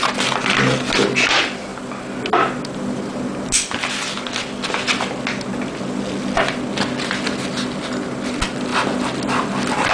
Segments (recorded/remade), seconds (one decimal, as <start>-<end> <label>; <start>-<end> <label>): 0.0-9.9 recorded

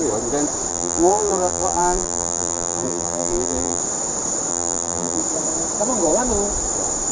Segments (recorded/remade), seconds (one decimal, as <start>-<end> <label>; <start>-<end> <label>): 0.0-0.7 recorded; 0.7-3.8 remade; 3.8-4.5 recorded; 4.5-5.2 remade; 5.2-7.1 recorded

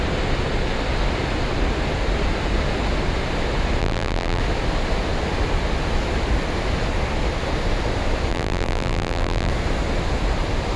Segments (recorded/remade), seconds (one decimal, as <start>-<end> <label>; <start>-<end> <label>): 0.0-3.8 recorded; 3.8-4.4 remade; 4.4-8.3 recorded; 8.3-9.5 remade; 9.5-10.8 recorded

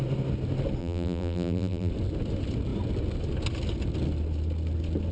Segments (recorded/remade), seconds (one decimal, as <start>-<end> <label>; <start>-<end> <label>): 0.0-0.8 recorded; 0.8-1.9 remade; 1.9-5.1 recorded

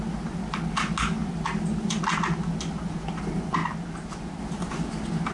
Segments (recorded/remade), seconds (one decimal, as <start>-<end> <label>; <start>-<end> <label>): 0.0-1.2 recorded; 1.2-2.0 remade; 2.0-5.3 recorded